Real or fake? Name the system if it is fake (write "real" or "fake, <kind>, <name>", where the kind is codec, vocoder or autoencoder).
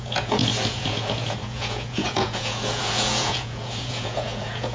fake, vocoder, Vocos